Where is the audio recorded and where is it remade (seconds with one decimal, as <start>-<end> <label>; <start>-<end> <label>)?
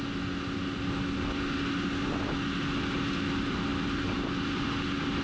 0.0-5.2 recorded